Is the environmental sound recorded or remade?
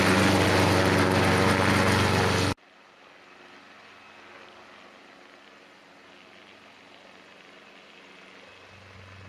recorded